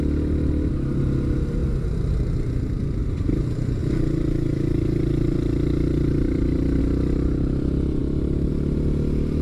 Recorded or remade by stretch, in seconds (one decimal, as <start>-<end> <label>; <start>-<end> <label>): 0.0-9.4 recorded